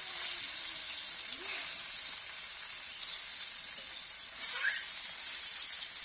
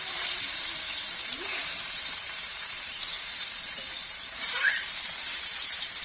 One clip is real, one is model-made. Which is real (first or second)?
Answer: first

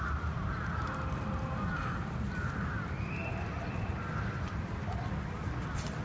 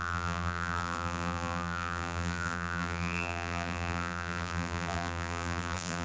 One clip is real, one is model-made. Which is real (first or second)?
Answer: first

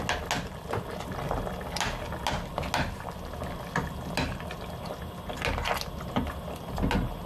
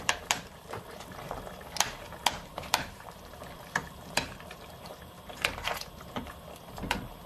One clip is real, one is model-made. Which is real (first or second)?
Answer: first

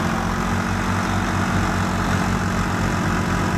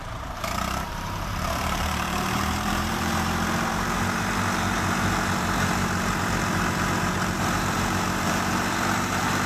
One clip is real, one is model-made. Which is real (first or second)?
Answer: first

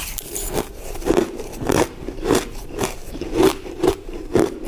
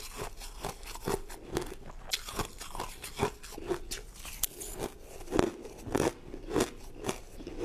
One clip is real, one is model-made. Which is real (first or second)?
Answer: second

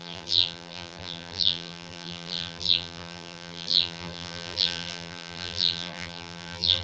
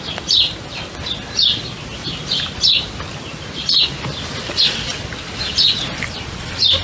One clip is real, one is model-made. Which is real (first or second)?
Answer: second